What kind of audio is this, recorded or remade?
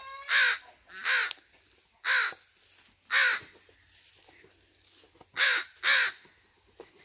recorded